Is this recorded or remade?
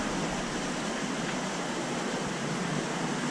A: recorded